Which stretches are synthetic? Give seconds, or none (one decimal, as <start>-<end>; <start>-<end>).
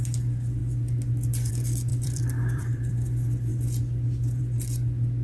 1.9-2.9